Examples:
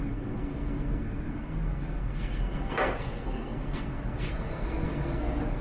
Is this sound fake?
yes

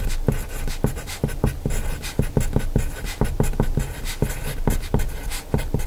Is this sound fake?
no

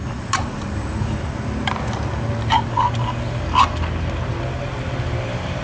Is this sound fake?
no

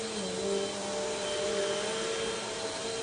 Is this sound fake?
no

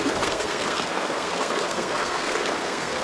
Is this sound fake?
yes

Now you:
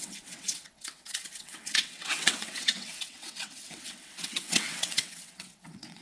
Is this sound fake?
yes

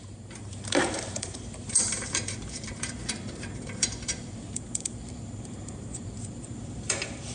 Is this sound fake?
yes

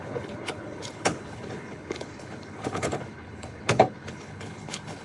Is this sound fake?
yes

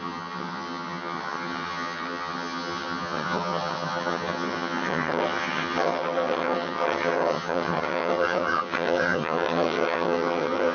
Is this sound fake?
yes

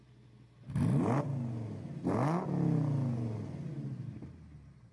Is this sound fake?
no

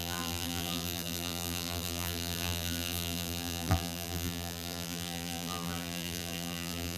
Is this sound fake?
yes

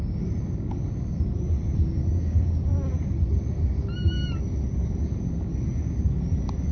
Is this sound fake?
no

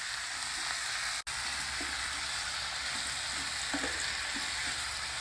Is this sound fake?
no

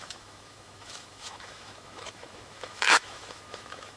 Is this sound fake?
yes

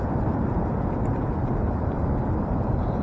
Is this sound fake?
yes